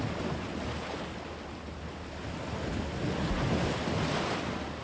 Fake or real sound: real